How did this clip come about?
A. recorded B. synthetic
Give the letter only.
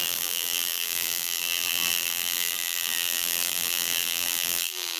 B